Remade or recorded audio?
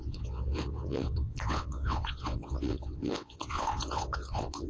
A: remade